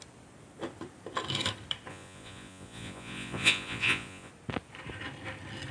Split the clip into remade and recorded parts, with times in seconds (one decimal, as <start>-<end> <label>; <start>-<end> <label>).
0.0-1.9 recorded; 1.9-4.3 remade; 4.3-5.7 recorded